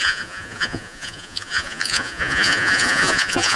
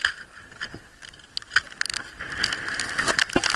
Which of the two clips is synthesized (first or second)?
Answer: first